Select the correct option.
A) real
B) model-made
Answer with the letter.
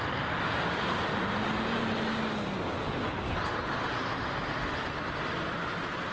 A